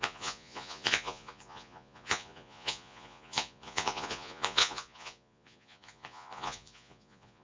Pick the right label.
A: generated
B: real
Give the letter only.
A